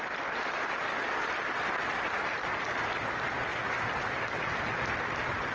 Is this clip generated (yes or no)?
no